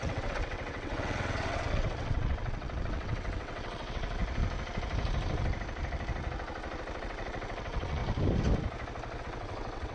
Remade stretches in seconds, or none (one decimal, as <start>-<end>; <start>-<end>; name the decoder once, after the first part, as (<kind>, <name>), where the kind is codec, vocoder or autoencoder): 0.0-4.2 (vocoder, WaveNeXt); 7.0-8.0; 9.2-9.9